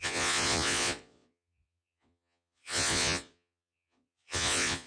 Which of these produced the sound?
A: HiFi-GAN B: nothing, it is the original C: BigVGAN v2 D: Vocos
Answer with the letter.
D